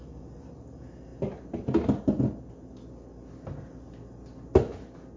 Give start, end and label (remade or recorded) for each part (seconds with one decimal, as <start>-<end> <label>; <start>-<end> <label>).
0.0-5.2 recorded